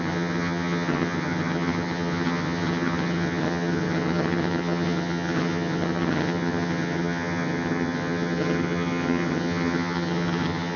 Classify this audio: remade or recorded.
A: remade